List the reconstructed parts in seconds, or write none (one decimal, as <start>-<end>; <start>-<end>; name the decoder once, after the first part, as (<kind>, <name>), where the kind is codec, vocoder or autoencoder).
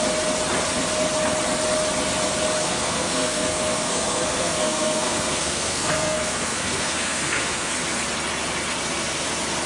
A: 2.6-7.7 (codec, SNAC)